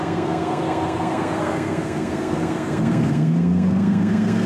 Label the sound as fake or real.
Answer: fake